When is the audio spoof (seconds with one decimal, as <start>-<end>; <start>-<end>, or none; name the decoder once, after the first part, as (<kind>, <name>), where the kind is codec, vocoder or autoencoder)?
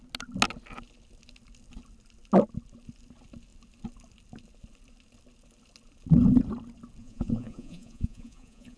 7.0-8.8 (vocoder, Vocos)